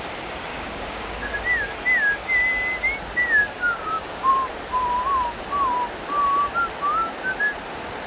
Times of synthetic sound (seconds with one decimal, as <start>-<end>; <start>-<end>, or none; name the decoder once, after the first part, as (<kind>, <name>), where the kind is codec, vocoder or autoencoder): 0.5-1.3 (codec, DAC); 3.4-4.3